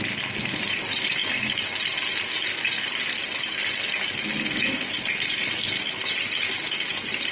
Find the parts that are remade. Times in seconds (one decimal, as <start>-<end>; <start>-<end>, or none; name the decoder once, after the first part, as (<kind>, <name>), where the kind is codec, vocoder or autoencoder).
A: none